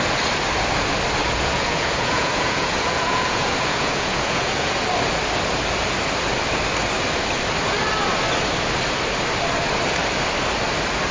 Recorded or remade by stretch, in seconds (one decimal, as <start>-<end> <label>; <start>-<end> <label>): 0.0-1.2 recorded; 1.2-4.9 remade; 4.9-11.1 recorded